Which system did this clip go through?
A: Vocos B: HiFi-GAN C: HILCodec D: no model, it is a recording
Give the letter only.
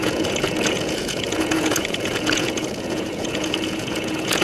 A